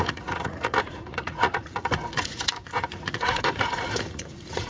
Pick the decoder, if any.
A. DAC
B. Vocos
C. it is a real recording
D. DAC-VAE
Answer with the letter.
B